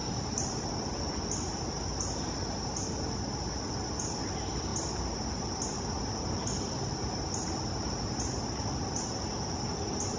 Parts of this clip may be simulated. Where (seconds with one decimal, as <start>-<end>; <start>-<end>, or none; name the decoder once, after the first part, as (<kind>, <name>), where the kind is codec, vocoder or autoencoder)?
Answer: none